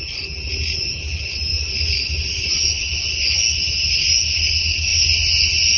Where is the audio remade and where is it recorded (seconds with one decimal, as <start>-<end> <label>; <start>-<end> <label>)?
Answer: 0.0-5.8 recorded